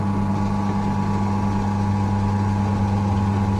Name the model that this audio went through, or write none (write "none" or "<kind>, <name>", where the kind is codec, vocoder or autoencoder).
none